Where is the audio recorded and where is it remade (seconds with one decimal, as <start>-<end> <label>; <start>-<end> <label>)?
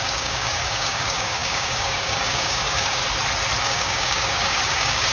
0.0-3.0 remade; 3.0-3.6 recorded; 3.6-5.1 remade